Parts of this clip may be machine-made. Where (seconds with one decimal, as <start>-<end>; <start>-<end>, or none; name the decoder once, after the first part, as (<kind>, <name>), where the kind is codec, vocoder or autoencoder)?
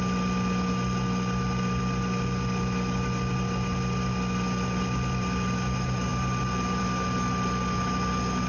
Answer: none